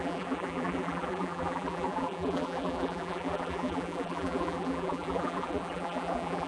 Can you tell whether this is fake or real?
fake